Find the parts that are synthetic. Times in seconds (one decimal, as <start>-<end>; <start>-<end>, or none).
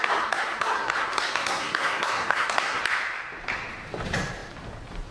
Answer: 0.0-2.8